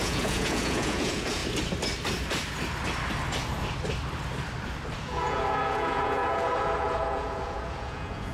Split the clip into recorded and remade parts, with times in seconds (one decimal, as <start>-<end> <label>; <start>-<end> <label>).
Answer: 0.0-1.4 remade; 1.4-5.0 recorded; 5.0-8.3 remade